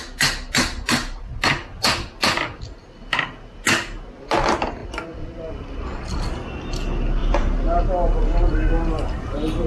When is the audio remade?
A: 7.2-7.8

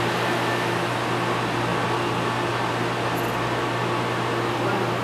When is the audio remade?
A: none

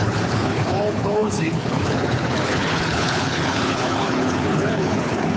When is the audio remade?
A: 0.0-5.4

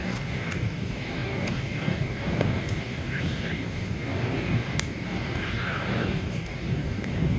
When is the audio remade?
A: 0.0-7.4

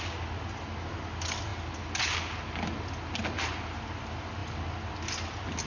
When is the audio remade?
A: none

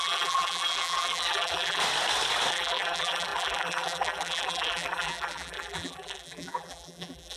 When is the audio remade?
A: 0.0-1.8; 2.5-7.4

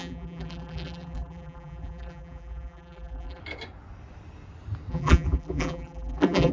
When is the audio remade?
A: 0.0-3.4; 4.9-6.5

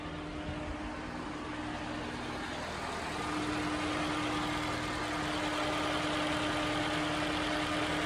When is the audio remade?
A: 0.8-1.3